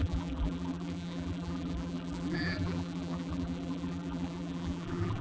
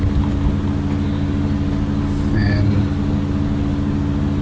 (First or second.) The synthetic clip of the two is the first